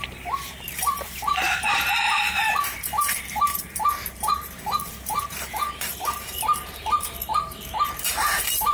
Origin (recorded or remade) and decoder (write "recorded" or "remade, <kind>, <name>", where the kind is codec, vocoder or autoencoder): remade, vocoder, BigVGAN v2